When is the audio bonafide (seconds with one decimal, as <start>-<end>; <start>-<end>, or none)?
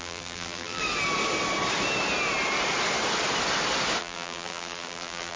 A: 0.8-4.0